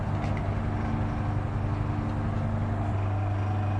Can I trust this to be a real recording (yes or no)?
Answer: yes